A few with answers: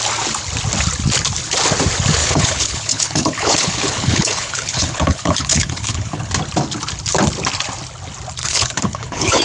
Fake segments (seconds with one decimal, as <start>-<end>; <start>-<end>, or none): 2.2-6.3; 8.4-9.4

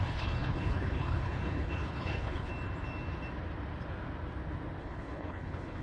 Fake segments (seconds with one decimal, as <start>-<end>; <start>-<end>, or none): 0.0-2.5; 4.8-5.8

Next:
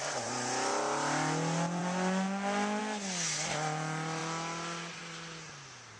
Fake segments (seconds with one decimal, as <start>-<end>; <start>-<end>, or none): none

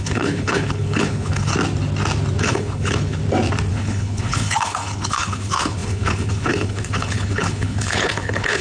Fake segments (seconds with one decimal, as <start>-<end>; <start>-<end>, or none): 0.0-1.5; 2.4-3.2; 3.7-8.6

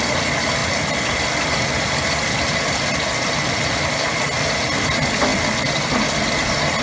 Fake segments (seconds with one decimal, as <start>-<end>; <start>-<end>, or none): none

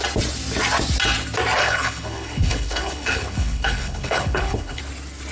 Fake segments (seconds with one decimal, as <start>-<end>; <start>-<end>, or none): 1.6-4.8

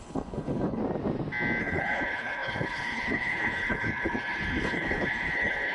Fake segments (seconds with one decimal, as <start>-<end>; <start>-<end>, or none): 0.0-0.8; 1.6-5.7

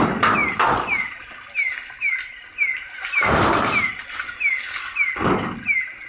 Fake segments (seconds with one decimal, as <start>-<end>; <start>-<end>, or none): none